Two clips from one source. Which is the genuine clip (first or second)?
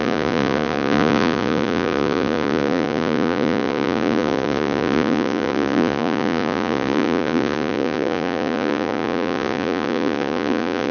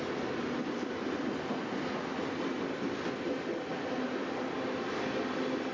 second